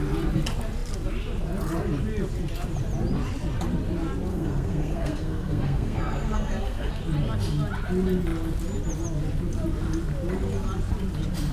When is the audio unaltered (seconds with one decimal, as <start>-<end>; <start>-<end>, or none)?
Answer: 0.0-4.3; 6.9-11.5